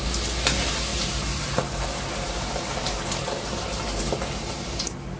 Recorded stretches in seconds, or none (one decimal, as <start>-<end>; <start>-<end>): 0.0-0.9; 4.0-5.2